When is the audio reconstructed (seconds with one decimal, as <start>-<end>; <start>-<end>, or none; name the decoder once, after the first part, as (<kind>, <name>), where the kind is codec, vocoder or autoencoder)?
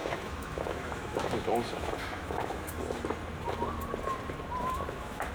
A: 0.0-2.8 (autoencoder, DAC-VAE); 4.6-5.3